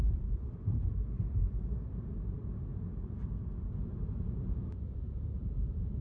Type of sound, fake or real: fake